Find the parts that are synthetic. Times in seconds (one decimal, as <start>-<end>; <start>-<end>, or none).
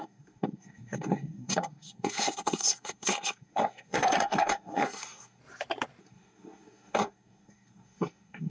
0.0-5.4; 6.0-8.5